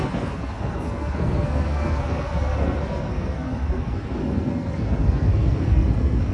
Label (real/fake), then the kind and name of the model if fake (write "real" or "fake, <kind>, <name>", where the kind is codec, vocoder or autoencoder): fake, codec, SNAC